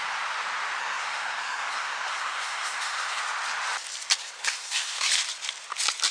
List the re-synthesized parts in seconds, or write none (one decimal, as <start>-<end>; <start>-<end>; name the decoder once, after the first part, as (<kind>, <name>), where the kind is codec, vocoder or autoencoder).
0.8-3.2 (codec, SNAC); 4.2-5.1